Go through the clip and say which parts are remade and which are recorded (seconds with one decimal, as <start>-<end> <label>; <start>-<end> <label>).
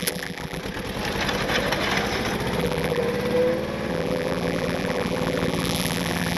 0.0-0.6 remade; 0.6-2.6 recorded; 2.6-3.0 remade; 3.0-3.9 recorded; 3.9-6.4 remade